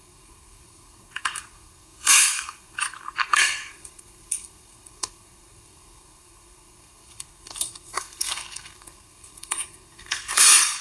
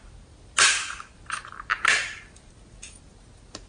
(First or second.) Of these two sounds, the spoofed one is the first